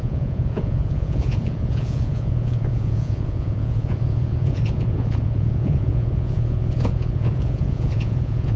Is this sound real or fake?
fake